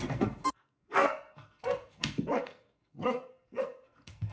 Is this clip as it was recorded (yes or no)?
no